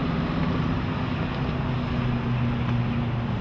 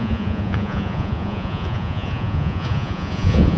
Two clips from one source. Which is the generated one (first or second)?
second